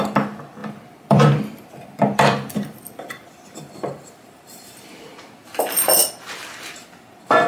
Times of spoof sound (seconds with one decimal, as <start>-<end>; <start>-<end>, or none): 0.6-5.0